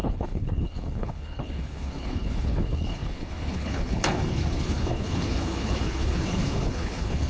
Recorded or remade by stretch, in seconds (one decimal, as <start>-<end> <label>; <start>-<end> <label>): 0.0-7.3 remade